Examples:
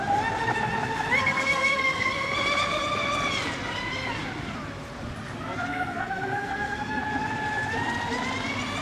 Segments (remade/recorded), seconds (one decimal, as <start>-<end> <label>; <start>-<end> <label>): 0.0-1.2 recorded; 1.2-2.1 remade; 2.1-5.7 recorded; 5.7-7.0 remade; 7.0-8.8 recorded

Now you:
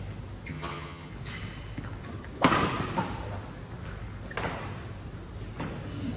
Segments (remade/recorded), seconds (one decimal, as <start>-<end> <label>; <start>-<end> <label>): 0.0-0.5 recorded; 0.5-1.1 remade; 1.1-6.2 recorded

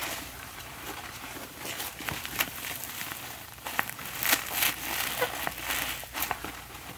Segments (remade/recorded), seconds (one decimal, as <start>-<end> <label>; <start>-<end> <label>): 0.0-4.2 remade; 4.2-6.0 recorded; 6.0-7.0 remade

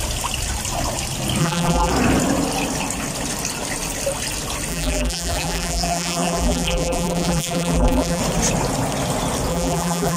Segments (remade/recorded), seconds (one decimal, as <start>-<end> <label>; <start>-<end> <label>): 0.0-1.4 recorded; 1.4-1.9 remade; 1.9-4.7 recorded; 4.7-8.2 remade; 8.2-9.5 recorded; 9.5-10.2 remade

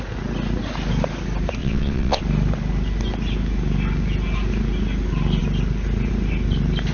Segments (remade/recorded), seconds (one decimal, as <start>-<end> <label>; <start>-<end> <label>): 0.0-1.6 recorded; 1.6-2.2 remade; 2.2-6.9 recorded

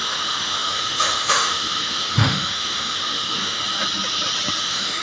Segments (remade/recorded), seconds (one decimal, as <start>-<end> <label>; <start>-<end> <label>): 0.0-3.6 remade; 3.6-4.6 recorded; 4.6-5.0 remade

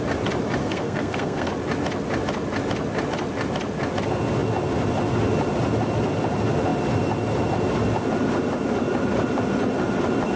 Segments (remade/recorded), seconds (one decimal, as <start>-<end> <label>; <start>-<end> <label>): 0.0-0.6 recorded; 0.6-1.5 remade; 1.5-10.4 recorded